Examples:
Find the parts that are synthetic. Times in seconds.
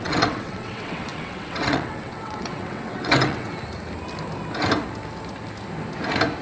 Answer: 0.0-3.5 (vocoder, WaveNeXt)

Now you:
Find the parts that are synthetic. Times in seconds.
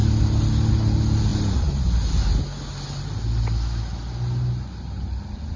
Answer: none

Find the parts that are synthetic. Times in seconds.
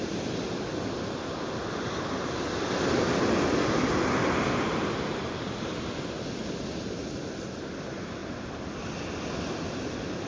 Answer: none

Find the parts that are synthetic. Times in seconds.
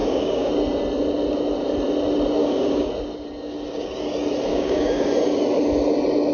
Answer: 0.0-0.5 (codec, DAC); 2.4-2.9; 4.5-5.1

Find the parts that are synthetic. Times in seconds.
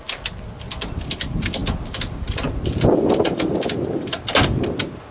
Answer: none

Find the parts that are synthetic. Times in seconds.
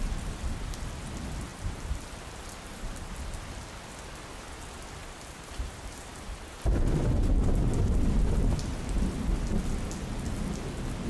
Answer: 1.5-3.1 (vocoder, BigVGAN v2); 5.0-6.6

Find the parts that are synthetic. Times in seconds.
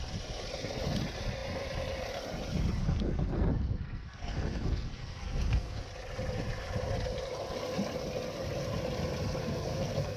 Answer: 2.8-5.8 (codec, SNAC); 9.4-10.2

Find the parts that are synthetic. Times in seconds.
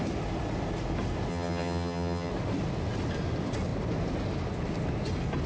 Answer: 1.3-2.3 (vocoder, HiFi-GAN)